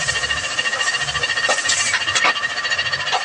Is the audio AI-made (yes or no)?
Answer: yes